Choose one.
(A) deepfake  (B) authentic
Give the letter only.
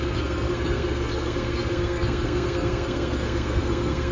A